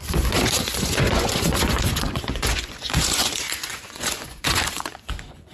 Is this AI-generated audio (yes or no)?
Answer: yes